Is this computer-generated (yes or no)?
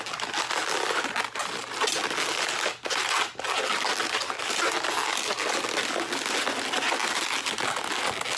no